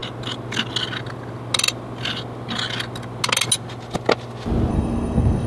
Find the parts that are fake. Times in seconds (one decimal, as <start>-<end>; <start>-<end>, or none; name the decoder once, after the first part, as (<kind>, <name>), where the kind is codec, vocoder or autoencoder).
4.7-5.5 (codec, SNAC)